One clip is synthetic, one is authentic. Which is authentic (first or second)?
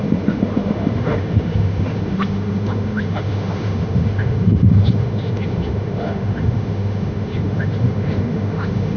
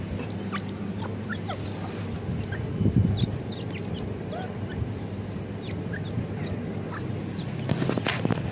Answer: second